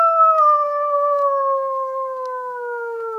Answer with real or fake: fake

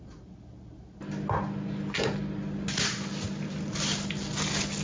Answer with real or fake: real